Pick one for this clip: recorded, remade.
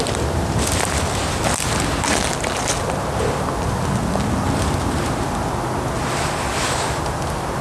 recorded